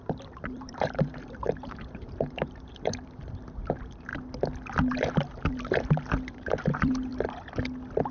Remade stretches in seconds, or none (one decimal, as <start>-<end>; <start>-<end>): 0.0-4.1; 4.9-7.1